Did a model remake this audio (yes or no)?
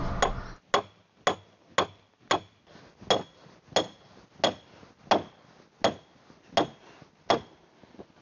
no